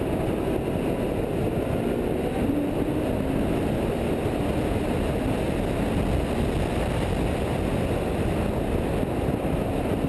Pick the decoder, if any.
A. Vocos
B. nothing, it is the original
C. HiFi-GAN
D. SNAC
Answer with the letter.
B